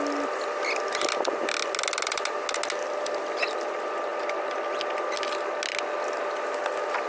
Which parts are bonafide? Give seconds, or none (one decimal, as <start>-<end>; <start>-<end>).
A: 0.0-7.1